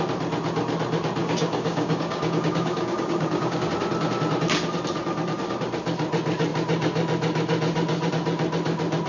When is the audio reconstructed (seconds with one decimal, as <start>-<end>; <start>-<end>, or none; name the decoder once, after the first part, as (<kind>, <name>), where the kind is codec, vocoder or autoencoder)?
1.2-3.7 (codec, DAC)